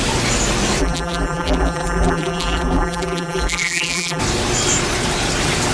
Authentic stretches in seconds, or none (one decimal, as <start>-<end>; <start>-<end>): 0.0-0.8; 4.2-5.7